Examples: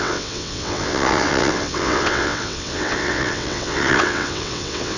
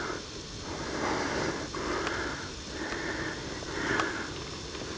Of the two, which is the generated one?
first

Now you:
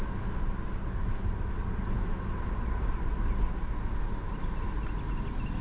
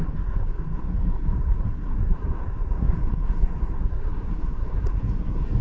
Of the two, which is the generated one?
second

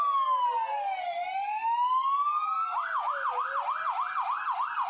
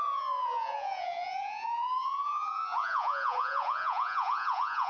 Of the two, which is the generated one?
second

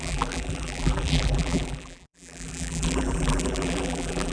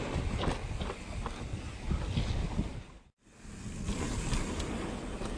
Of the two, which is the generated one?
first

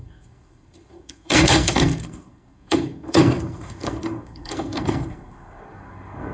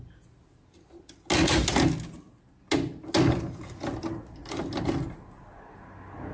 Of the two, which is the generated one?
first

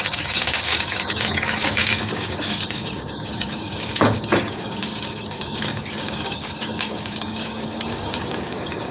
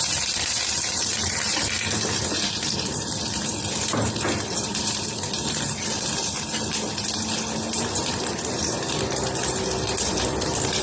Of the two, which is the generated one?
first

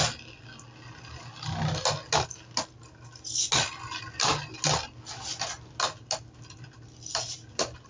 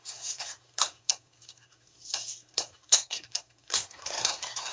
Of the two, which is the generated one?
second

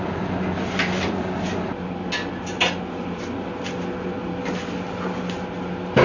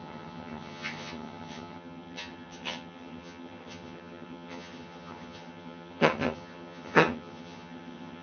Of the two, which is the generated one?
second